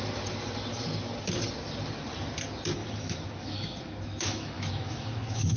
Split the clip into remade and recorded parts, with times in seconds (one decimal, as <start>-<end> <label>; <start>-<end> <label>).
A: 0.0-2.8 recorded; 2.8-5.6 remade